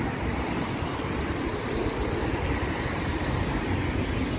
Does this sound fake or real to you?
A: real